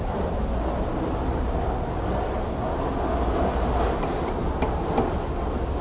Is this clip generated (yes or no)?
no